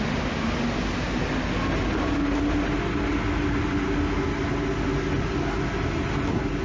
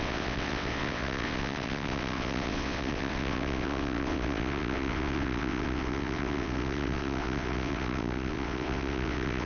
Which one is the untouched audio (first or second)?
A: first